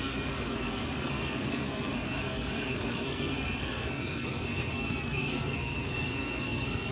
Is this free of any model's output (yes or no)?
no